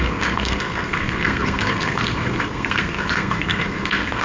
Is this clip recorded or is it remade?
remade